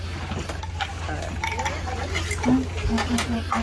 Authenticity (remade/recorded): recorded